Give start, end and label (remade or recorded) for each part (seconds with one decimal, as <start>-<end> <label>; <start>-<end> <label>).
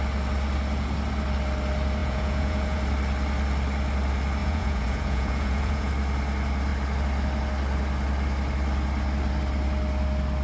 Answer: 0.0-2.0 recorded; 2.0-2.8 remade; 2.8-4.4 recorded; 4.4-5.9 remade; 5.9-10.4 recorded